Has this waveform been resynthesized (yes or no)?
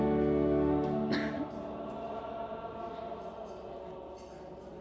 no